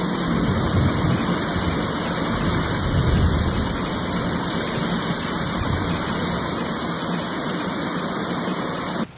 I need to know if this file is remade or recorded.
recorded